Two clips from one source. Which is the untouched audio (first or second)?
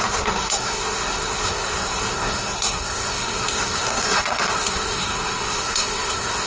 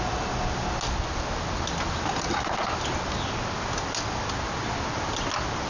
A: second